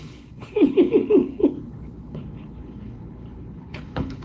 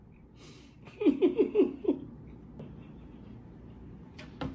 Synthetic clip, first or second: first